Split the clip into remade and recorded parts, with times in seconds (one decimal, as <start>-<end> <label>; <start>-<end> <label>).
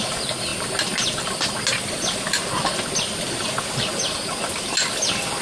0.0-5.4 recorded